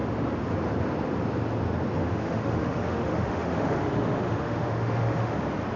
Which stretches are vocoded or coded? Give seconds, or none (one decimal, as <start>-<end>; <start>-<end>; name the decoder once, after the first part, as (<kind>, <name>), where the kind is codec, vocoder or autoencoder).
2.0-5.3 (autoencoder, DAC-VAE)